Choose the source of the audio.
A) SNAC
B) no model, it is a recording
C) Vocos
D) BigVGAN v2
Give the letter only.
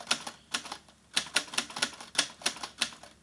B